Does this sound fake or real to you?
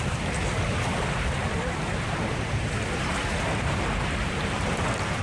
fake